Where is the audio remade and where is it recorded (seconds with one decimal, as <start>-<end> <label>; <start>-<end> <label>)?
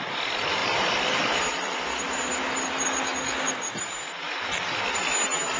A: 0.0-5.6 recorded